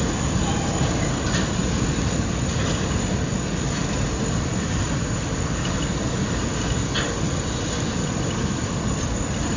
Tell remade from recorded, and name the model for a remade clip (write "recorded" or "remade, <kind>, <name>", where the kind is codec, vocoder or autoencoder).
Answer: recorded